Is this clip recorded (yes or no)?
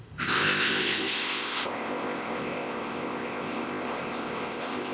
no